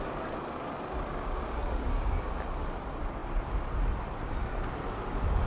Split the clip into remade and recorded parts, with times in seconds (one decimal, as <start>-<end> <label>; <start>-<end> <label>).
0.0-1.1 recorded; 1.1-2.4 remade; 2.4-5.5 recorded